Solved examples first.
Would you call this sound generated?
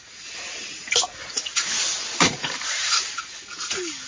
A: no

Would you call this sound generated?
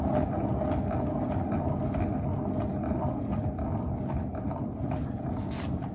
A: no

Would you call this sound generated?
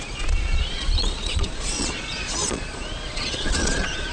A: yes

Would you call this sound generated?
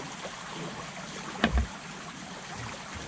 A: no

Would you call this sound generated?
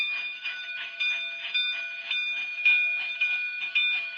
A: yes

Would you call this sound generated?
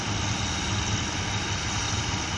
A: yes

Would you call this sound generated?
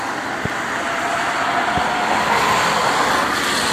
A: no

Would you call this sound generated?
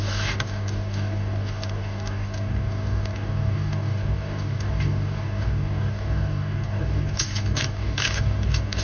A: yes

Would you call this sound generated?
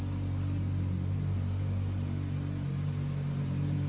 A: no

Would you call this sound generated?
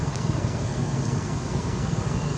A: yes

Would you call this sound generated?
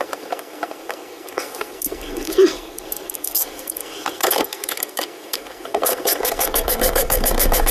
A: yes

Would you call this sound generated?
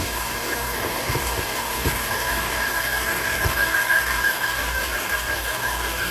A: yes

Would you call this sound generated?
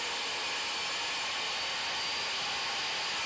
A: no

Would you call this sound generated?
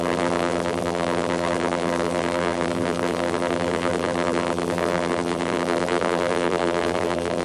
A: yes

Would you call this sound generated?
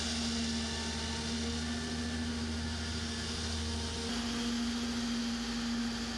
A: no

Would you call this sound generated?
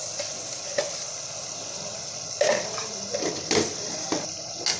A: no